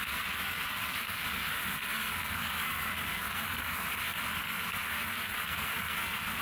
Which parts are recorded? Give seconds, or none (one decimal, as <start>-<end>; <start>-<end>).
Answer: none